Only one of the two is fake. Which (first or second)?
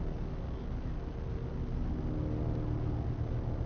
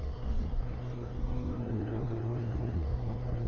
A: second